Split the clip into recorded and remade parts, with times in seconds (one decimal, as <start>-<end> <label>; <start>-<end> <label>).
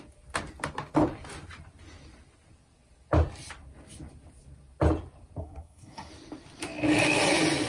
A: 0.0-5.4 recorded; 5.4-6.1 remade; 6.1-7.7 recorded